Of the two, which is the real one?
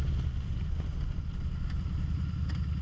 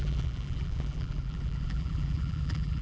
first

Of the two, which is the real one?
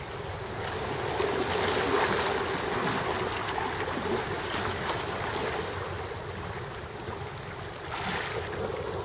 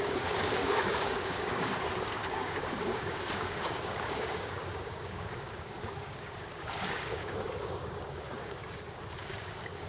first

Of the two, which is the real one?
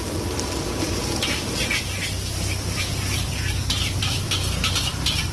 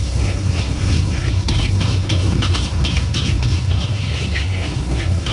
first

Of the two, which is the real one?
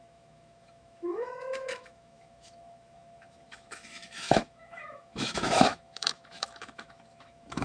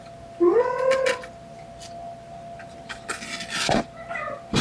second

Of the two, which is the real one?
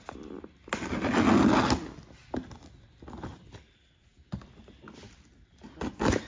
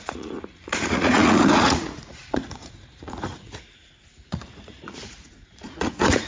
first